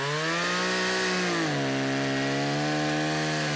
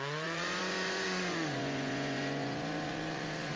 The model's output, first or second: second